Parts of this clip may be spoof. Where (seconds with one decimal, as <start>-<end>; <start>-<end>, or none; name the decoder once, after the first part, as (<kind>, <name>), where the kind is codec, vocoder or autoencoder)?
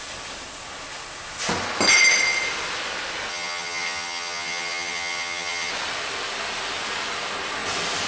3.3-5.7 (vocoder, HiFi-GAN)